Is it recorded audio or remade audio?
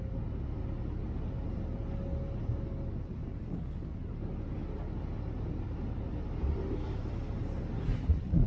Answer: recorded